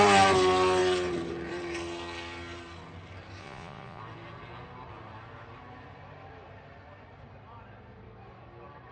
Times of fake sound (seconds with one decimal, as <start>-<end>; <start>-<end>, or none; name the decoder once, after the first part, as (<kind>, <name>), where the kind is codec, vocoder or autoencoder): 3.4-4.0 (vocoder, Vocos)

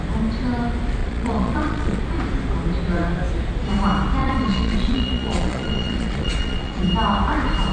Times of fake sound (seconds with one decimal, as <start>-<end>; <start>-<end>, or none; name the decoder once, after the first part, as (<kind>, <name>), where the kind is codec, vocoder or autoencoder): 1.0-2.0 (vocoder, Vocos); 4.2-6.8

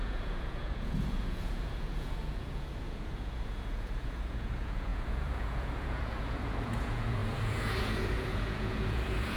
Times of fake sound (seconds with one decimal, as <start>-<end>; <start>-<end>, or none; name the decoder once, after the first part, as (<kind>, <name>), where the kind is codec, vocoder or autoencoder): 0.0-9.4 (vocoder, Vocos)